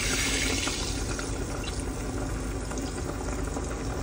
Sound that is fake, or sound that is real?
real